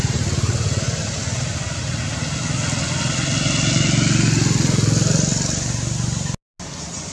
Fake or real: real